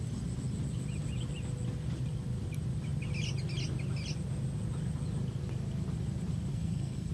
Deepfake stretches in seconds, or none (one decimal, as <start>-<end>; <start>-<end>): 6.5-7.1